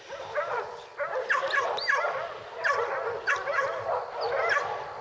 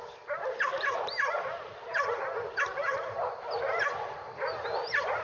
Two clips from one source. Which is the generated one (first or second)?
second